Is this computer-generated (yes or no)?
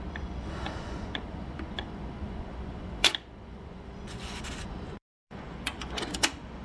yes